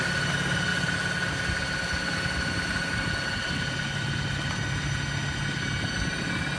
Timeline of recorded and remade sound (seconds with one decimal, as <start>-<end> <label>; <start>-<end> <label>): 0.0-6.6 recorded